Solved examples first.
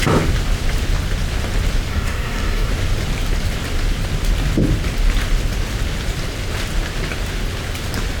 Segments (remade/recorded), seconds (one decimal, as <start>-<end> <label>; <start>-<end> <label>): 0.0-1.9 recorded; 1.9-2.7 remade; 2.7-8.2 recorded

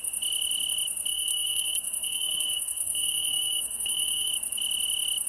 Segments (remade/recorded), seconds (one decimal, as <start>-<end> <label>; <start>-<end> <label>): 0.0-1.1 recorded; 1.1-4.3 remade; 4.3-5.3 recorded

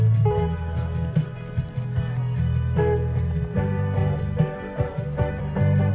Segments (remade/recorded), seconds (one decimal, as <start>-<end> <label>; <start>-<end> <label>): 0.0-5.9 recorded